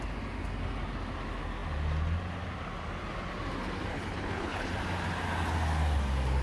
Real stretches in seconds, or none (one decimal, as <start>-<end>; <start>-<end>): 0.0-3.9; 4.7-6.4